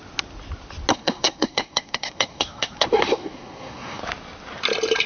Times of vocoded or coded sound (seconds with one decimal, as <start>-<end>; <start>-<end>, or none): 0.9-4.0